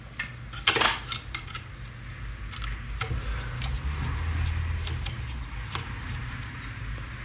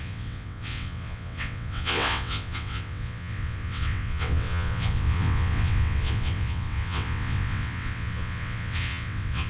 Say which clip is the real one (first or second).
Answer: first